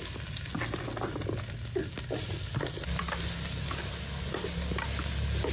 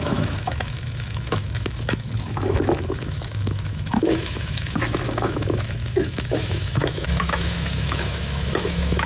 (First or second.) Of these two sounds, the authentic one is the first